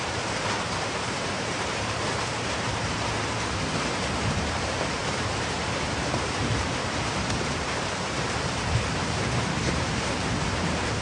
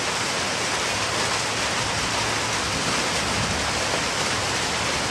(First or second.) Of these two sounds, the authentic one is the second